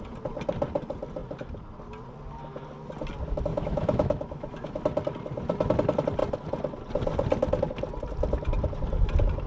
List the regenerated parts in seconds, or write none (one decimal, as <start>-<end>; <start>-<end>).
3.5-4.8